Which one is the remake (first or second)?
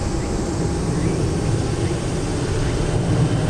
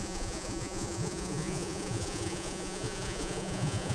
second